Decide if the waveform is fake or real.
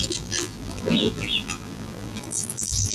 fake